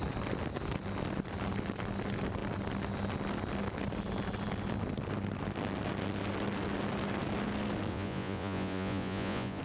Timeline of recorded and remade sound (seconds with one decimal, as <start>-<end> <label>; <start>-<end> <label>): 0.0-7.9 recorded; 7.9-9.6 remade